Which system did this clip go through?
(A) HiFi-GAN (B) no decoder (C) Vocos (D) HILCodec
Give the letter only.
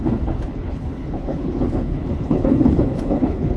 D